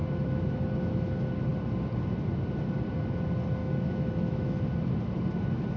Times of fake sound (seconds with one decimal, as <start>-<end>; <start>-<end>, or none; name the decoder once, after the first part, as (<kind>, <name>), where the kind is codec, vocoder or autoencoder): 3.6-4.6 (autoencoder, DAC-VAE)